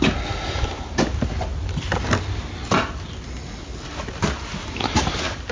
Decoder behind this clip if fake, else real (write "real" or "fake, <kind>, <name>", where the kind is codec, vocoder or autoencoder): real